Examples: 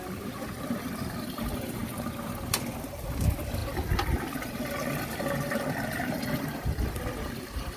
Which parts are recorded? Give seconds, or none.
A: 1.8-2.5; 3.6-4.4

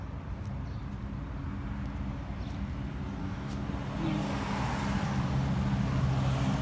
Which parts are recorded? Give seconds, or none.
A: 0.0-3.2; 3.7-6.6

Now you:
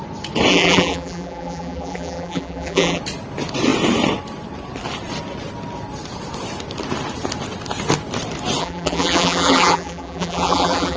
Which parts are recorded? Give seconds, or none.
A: 0.0-0.5; 3.0-8.6